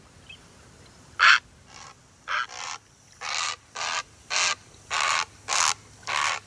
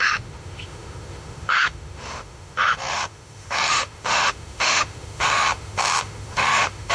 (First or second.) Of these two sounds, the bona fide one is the first